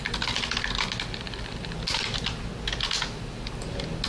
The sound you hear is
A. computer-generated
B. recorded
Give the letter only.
B